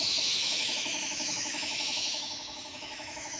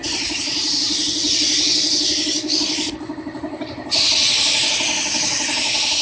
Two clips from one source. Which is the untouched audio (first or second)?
second